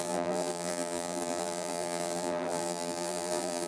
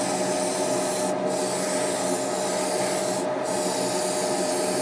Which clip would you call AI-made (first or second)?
first